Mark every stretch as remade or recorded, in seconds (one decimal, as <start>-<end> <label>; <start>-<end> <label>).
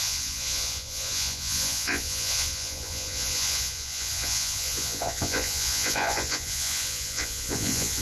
0.0-8.0 remade